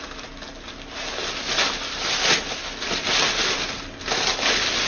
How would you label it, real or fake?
real